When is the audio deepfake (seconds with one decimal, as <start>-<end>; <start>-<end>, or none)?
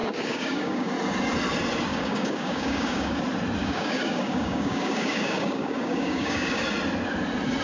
0.0-0.9; 1.9-3.2; 3.6-6.6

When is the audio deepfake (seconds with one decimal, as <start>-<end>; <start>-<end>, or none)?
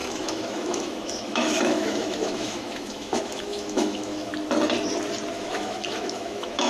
0.0-4.3; 5.3-6.7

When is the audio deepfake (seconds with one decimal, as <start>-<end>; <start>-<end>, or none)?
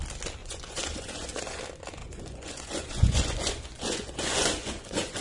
0.4-1.6; 2.0-5.2